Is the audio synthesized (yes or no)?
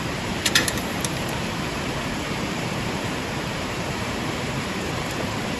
yes